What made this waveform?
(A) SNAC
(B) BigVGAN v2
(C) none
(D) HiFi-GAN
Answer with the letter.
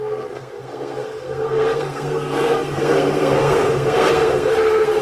A